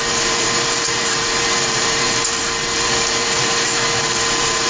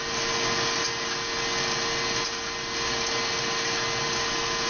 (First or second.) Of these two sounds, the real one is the second